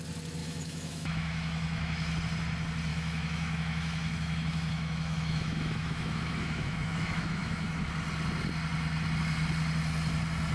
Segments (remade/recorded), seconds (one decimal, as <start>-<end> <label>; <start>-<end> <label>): 0.0-0.4 recorded; 0.4-2.1 remade; 2.1-2.9 recorded; 2.9-7.9 remade; 7.9-10.5 recorded